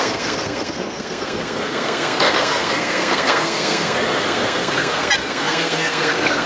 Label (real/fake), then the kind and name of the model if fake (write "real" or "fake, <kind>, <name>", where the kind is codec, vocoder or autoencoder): fake, codec, SNAC